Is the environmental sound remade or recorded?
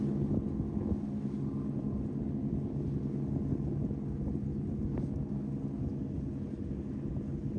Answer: recorded